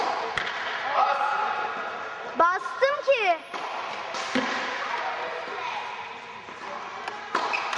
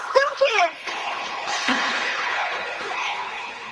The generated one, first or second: second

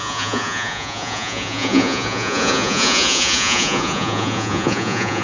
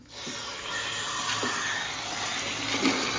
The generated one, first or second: first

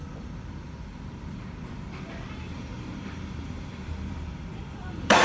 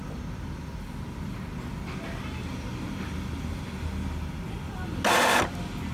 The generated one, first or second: first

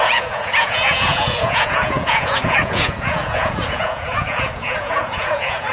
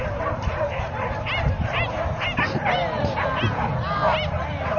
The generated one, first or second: first